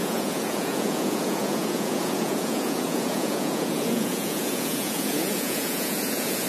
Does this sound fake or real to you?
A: fake